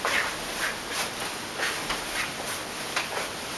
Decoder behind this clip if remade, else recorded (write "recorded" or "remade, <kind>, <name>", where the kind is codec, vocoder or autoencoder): recorded